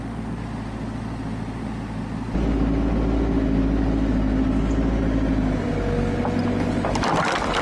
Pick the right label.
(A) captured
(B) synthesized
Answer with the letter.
A